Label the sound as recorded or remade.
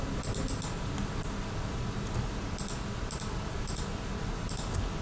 recorded